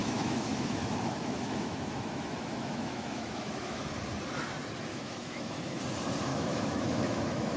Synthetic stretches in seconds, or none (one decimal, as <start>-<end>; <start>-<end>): 0.0-3.8; 4.9-5.8; 6.3-7.6